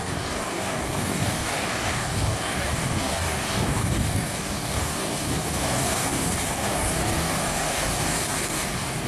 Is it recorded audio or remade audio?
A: remade